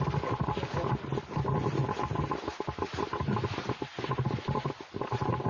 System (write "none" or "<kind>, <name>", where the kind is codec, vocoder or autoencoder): none